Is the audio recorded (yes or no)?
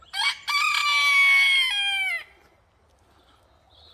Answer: yes